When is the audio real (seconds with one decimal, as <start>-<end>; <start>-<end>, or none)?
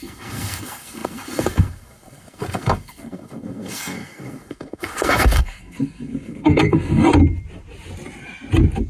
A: 7.1-8.9